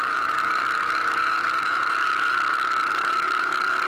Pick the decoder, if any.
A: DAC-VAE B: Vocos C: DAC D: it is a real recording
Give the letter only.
C